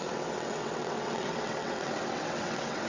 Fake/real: fake